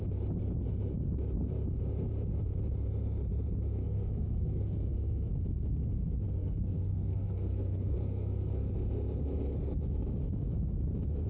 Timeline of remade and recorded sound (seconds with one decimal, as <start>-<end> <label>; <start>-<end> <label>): 0.0-3.8 recorded; 3.8-5.3 remade; 5.3-6.4 recorded; 6.4-8.7 remade; 8.7-11.3 recorded